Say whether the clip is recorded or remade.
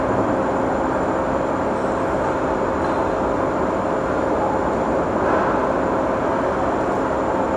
recorded